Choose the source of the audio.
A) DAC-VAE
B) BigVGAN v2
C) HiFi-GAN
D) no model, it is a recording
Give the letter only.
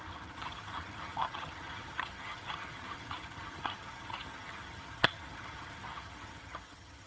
C